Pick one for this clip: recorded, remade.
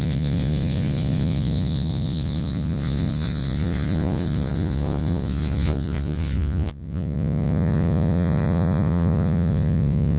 remade